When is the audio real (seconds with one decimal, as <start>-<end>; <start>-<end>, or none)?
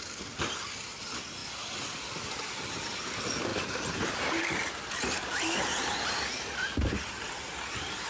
0.0-3.5; 6.1-8.1